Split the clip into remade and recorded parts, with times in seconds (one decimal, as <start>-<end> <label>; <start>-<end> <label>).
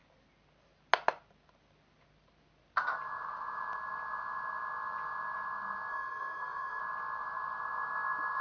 0.0-5.9 recorded; 5.9-6.8 remade; 6.8-8.4 recorded